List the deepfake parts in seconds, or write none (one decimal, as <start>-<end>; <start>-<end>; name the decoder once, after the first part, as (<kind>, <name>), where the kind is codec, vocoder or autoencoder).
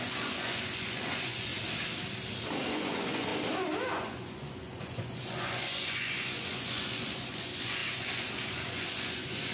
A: 0.0-1.5 (vocoder, Vocos); 2.7-3.3; 3.9-9.5